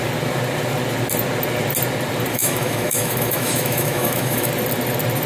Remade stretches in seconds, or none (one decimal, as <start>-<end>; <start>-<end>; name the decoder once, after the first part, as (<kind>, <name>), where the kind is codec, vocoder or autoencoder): 2.3-4.5 (autoencoder, DAC-VAE)